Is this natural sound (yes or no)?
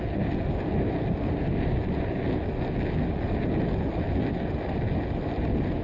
yes